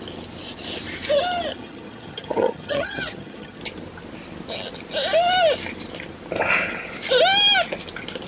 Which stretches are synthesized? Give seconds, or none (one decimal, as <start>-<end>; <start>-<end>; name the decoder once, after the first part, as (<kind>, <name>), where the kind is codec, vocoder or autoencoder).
1.5-3.6 (vocoder, HiFi-GAN)